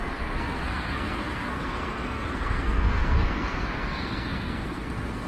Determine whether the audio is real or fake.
fake